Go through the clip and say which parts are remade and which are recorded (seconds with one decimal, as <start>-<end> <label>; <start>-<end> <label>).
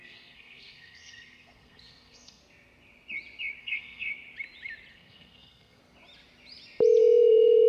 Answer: 0.0-2.4 remade; 2.4-3.6 recorded; 3.6-4.1 remade; 4.1-4.9 recorded; 4.9-5.8 remade; 5.8-7.0 recorded; 7.0-7.7 remade